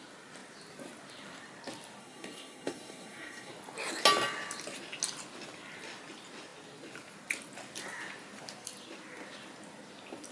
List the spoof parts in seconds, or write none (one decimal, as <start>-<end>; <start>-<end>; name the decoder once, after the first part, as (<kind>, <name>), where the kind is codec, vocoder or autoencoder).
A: 2.0-3.5 (codec, SNAC)